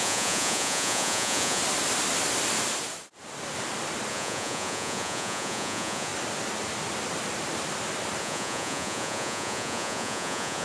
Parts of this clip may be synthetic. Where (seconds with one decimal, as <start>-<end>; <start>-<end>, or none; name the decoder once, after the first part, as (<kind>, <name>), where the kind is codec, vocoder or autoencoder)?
0.0-1.6 (vocoder, Vocos); 4.1-6.1; 8.2-10.6